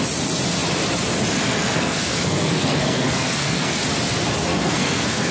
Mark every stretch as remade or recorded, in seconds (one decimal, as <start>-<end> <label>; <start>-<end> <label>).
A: 0.0-1.5 recorded; 1.5-3.8 remade; 3.8-4.5 recorded; 4.5-5.3 remade